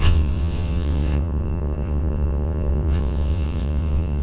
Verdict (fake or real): fake